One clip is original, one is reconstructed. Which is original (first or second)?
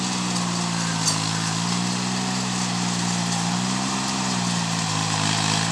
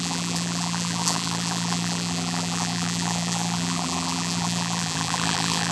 first